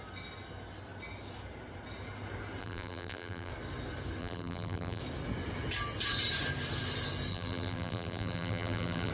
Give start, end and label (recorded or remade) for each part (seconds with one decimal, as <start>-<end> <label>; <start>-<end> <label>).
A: 0.0-2.6 recorded; 2.6-3.5 remade; 3.5-4.2 recorded; 4.2-5.0 remade; 5.0-7.3 recorded; 7.3-9.1 remade